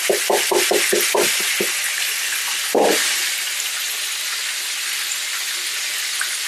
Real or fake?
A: real